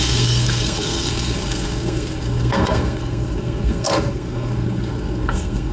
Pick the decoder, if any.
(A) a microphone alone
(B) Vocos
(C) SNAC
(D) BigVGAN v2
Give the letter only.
C